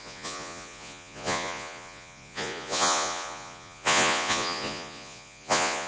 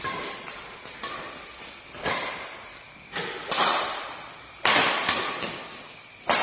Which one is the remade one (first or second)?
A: first